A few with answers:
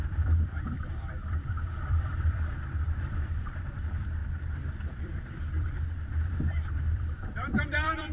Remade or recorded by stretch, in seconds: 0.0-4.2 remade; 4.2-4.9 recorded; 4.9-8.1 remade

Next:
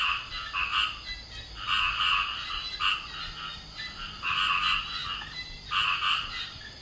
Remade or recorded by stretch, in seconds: 0.0-6.8 recorded

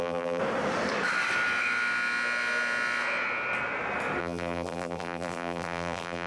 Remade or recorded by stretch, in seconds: 0.0-0.4 remade; 0.4-4.2 recorded; 4.2-6.3 remade

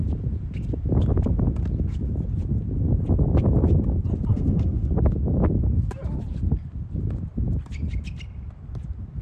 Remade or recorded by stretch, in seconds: 0.0-4.3 recorded; 4.3-4.9 remade; 4.9-9.2 recorded